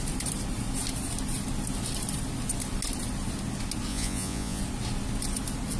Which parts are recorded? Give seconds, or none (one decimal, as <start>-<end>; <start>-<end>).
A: 0.0-3.9; 4.6-5.8